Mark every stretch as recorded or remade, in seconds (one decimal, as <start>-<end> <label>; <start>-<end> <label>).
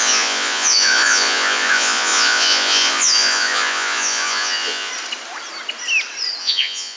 0.0-4.9 remade; 4.9-6.4 recorded; 6.4-7.0 remade